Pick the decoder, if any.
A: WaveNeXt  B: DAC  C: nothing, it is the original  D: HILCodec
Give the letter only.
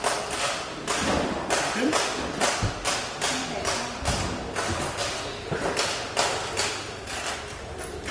C